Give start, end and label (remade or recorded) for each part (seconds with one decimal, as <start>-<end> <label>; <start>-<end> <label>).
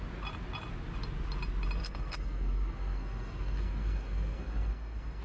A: 0.0-1.8 recorded; 1.8-5.2 remade